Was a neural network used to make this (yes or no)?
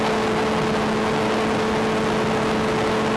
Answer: no